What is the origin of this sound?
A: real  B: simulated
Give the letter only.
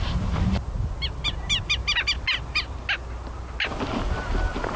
A